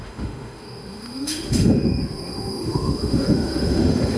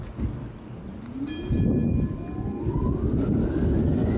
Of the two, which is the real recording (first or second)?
second